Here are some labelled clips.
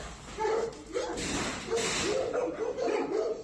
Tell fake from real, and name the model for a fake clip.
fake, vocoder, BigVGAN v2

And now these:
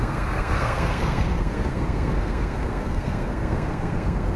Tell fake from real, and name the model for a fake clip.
fake, codec, SNAC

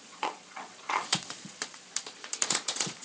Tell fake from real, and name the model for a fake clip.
fake, vocoder, Vocos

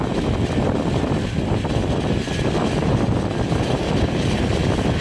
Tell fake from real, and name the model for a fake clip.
real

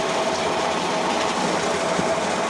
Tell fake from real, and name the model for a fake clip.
real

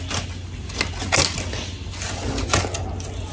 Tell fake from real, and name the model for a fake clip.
real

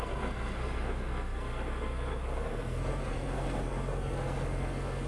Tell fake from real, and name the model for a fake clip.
fake, codec, SNAC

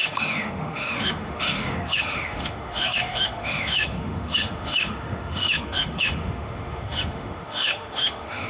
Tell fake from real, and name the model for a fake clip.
fake, autoencoder, DAC-VAE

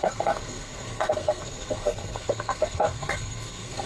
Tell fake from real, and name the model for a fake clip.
fake, codec, SNAC